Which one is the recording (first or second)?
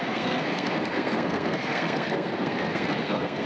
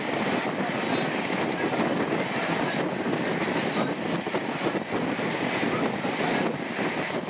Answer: second